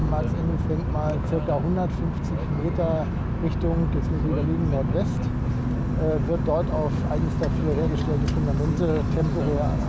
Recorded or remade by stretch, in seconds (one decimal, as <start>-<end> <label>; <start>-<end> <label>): 0.0-9.9 recorded